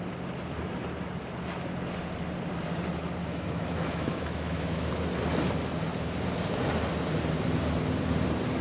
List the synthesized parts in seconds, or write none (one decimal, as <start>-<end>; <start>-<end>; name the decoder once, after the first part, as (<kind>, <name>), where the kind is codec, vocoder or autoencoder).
3.2-4.9 (autoencoder, DAC-VAE)